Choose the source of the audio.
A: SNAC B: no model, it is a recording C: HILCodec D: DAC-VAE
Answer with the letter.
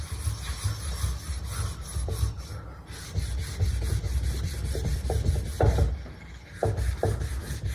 B